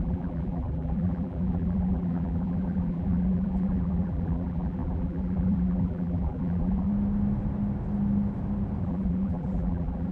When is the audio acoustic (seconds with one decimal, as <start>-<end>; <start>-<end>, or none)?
6.9-8.8